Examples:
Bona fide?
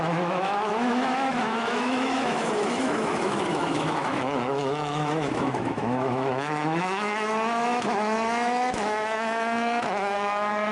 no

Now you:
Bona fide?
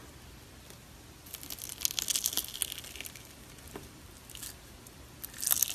yes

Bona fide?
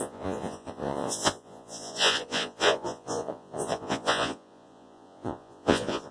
no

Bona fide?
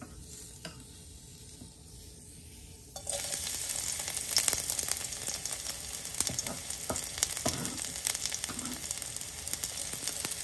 yes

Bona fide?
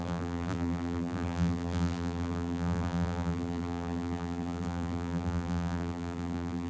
no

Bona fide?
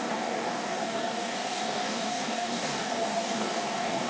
no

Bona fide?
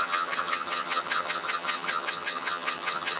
no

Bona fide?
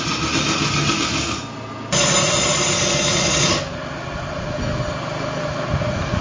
yes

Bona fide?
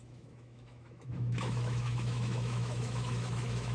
no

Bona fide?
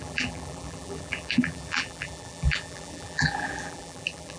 no